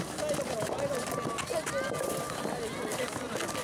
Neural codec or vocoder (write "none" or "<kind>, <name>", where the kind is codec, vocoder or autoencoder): none